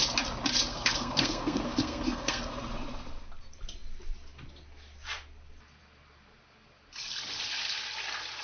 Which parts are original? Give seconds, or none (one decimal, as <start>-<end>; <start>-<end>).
0.0-0.7; 2.5-8.4